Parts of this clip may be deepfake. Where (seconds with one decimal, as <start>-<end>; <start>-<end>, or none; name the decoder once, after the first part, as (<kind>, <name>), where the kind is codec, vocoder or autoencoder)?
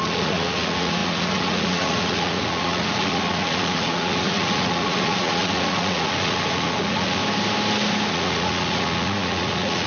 0.0-7.2 (vocoder, Vocos); 8.1-9.9